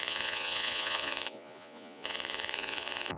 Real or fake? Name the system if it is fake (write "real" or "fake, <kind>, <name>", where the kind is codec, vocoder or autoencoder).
fake, vocoder, Vocos